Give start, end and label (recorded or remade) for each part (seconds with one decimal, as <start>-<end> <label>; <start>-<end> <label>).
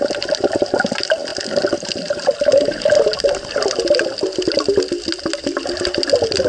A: 0.0-6.5 recorded